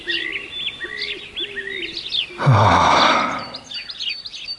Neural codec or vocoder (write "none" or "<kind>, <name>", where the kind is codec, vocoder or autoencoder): none